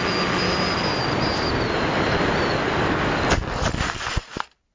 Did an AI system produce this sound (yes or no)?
no